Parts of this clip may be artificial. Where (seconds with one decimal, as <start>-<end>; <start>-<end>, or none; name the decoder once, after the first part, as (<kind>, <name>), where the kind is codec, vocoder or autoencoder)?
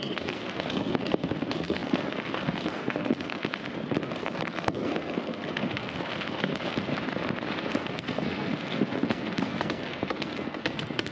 0.0-3.6 (codec, SNAC); 4.2-6.9; 7.6-11.1